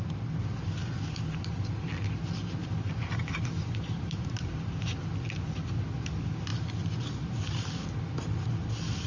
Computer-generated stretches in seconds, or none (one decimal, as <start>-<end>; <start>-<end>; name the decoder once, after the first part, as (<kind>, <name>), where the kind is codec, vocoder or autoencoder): 2.6-5.0 (vocoder, BigVGAN v2); 6.5-7.4